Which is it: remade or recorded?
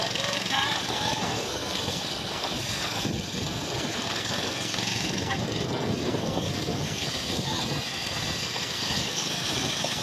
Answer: remade